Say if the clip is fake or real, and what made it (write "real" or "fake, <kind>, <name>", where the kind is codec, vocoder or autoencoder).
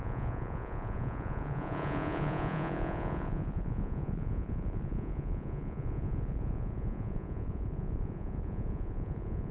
fake, vocoder, Vocos